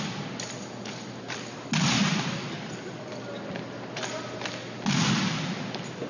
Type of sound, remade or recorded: recorded